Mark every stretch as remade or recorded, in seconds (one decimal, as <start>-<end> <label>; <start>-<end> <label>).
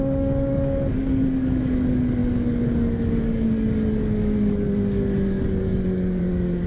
0.0-6.7 remade